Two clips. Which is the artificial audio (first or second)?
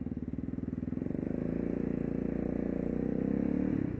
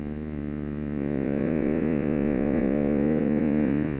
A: second